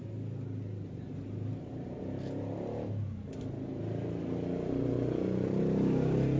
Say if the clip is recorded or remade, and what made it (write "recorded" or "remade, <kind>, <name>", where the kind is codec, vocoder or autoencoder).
recorded